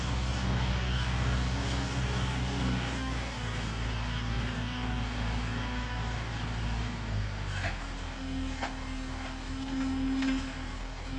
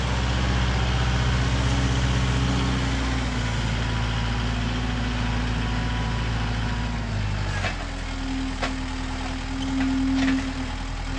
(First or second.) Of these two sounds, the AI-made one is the first